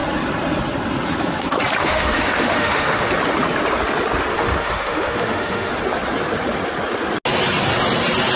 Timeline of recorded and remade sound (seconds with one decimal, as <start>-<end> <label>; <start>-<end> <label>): 0.0-1.8 recorded; 1.8-3.1 remade; 3.1-4.3 recorded; 4.3-5.7 remade; 5.7-8.4 recorded